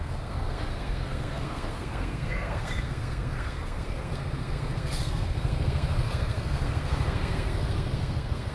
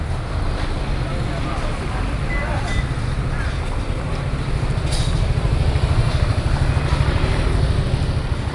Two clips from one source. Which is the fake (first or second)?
first